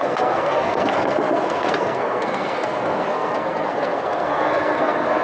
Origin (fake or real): fake